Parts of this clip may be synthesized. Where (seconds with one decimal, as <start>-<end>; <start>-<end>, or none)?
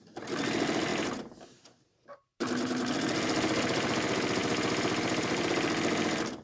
0.9-2.9